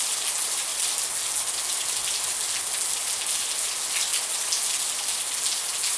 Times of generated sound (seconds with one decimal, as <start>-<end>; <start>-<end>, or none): none